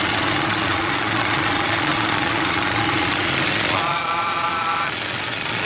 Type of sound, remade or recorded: remade